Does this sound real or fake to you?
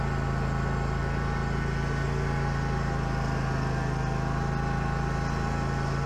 real